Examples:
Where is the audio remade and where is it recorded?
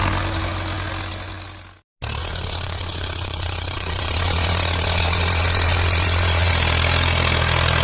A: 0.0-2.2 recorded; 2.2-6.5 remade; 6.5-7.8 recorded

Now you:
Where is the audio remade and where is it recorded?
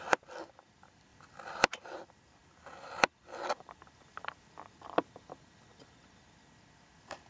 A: 0.0-1.1 recorded; 1.1-1.6 remade; 1.6-7.3 recorded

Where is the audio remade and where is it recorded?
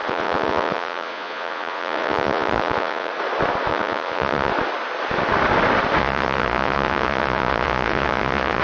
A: 0.0-3.1 remade; 3.1-3.7 recorded; 3.7-4.5 remade; 4.5-6.0 recorded; 6.0-8.6 remade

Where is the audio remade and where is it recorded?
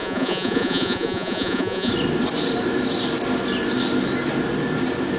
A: 0.0-1.9 remade; 1.9-5.2 recorded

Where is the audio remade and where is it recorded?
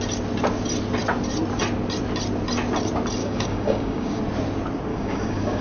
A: 0.0-3.2 recorded; 3.2-4.2 remade; 4.2-4.9 recorded; 4.9-5.6 remade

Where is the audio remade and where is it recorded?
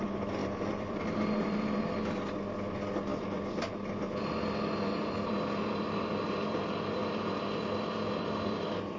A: 0.0-0.4 recorded; 0.4-1.8 remade; 1.8-3.1 recorded; 3.1-3.7 remade; 3.7-9.0 recorded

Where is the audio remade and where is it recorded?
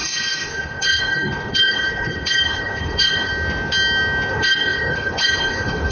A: 0.0-3.3 remade; 3.3-4.3 recorded; 4.3-5.9 remade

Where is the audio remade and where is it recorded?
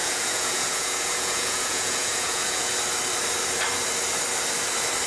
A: 0.0-2.7 remade; 2.7-5.1 recorded